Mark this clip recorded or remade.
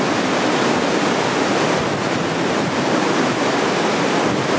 recorded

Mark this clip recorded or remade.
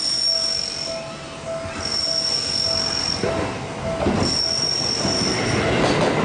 recorded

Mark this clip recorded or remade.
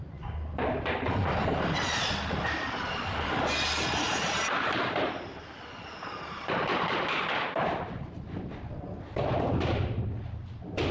recorded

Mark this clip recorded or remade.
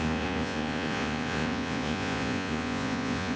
remade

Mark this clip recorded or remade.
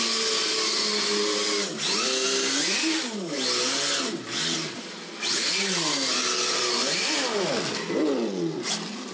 recorded